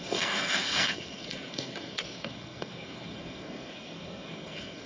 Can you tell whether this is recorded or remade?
remade